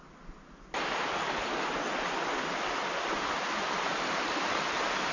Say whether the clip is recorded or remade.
recorded